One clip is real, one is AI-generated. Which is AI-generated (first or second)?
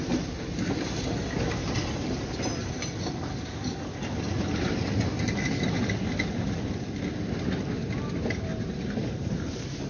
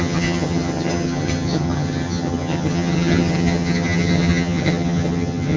second